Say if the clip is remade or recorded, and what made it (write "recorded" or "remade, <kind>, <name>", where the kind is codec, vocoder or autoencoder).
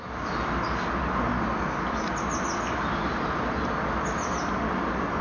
recorded